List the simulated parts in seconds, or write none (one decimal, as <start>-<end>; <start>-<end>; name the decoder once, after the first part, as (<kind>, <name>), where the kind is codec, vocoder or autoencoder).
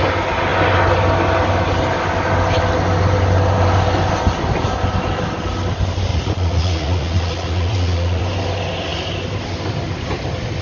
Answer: 6.1-8.2 (vocoder, Vocos)